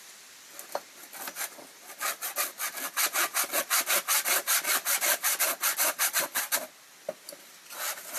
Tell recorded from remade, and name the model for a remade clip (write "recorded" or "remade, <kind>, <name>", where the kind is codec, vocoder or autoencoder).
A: remade, vocoder, BigVGAN v2